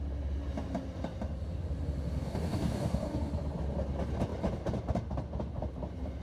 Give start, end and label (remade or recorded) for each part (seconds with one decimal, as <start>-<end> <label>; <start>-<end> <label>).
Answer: 0.0-2.2 recorded; 2.2-3.3 remade; 3.3-6.2 recorded